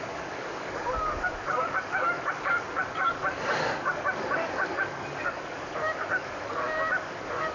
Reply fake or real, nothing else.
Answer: fake